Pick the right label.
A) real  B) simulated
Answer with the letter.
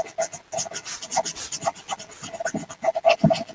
A